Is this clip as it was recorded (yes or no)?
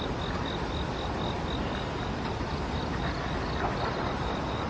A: yes